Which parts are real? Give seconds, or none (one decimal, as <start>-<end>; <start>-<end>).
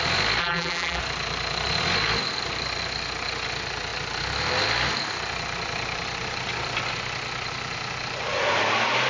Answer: 0.0-0.4; 1.0-9.1